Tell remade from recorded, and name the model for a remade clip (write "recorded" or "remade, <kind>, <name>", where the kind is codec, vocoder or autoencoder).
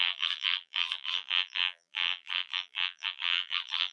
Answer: remade, vocoder, BigVGAN v2